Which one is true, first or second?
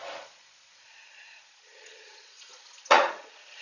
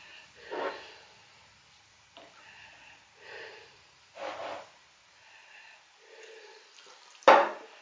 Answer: second